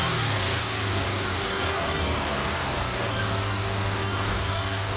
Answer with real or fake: fake